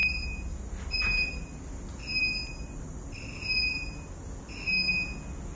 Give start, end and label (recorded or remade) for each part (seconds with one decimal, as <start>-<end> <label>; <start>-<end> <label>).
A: 0.0-5.5 recorded